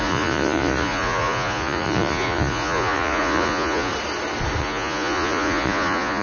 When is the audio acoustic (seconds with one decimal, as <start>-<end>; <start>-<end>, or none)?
3.9-4.6